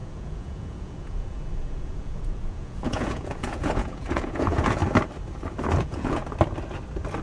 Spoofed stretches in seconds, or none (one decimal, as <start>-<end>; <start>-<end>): 0.0-4.8; 5.8-6.2